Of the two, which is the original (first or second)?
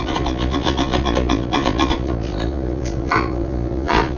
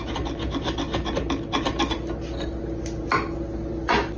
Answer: second